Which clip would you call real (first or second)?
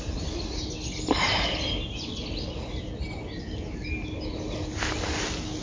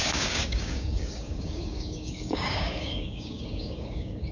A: first